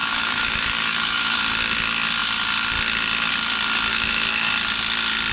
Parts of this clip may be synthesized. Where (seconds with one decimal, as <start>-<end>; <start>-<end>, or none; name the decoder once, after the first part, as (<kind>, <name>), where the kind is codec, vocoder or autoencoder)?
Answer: 0.0-1.4 (autoencoder, DAC-VAE); 3.9-4.5

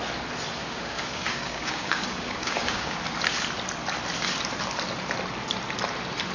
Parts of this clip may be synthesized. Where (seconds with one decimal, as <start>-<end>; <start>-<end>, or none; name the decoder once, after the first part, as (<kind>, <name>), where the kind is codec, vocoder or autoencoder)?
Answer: 0.6-3.0 (codec, DAC)